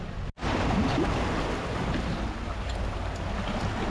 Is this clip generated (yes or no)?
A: no